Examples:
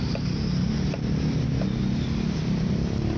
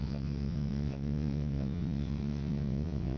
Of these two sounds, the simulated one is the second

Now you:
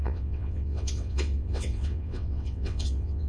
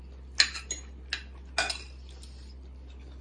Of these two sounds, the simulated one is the first